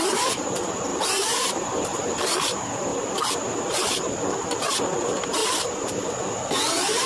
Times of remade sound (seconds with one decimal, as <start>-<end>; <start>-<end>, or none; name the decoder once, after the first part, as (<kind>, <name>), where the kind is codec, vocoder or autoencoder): 0.9-2.3 (vocoder, BigVGAN v2); 5.4-6.1